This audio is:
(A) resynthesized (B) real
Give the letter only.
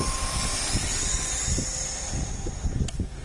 B